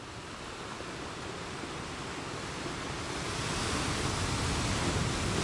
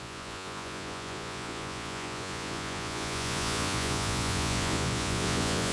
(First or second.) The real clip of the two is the first